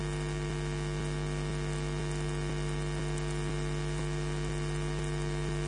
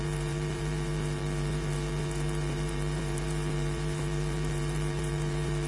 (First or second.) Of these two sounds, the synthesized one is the second